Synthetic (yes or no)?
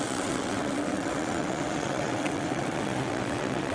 yes